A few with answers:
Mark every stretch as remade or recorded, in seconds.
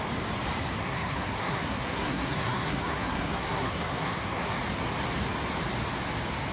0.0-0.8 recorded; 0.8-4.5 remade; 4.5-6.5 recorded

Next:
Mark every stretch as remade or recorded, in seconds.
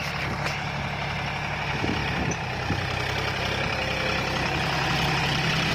0.0-5.7 recorded